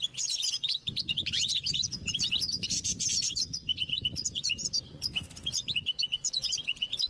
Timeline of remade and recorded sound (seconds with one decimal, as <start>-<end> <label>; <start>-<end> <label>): 0.0-7.1 remade